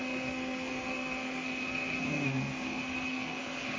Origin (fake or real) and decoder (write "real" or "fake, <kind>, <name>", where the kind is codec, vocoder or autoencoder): fake, codec, SNAC